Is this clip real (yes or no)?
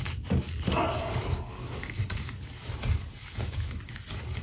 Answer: no